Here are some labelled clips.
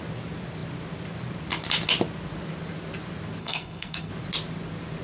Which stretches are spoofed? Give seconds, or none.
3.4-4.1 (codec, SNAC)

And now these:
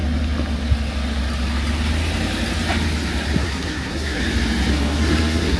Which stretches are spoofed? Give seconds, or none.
3.4-4.2 (codec, SNAC); 4.7-5.6

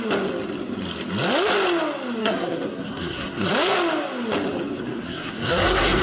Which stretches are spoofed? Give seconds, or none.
2.2-3.5 (codec, SNAC); 4.8-6.0

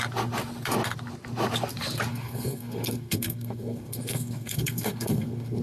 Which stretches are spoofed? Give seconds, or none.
2.1-5.6 (codec, SNAC)

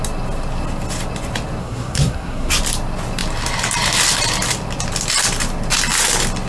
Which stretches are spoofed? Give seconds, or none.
1.6-2.5 (codec, SNAC)

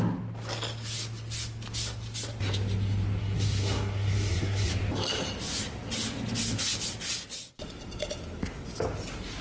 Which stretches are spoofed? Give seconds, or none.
3.2-4.7 (codec, SNAC)

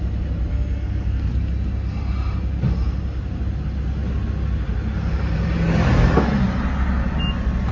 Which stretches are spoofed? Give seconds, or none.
0.5-1.3 (codec, SNAC)